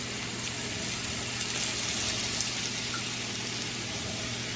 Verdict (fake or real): real